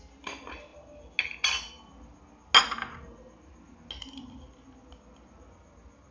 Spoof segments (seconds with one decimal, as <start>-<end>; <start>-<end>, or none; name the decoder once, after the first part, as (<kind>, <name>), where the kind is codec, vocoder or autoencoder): none